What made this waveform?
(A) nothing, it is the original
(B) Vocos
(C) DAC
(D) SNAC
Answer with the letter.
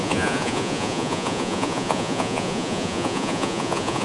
B